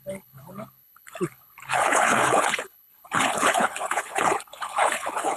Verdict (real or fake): fake